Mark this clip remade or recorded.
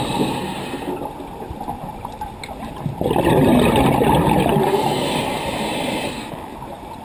recorded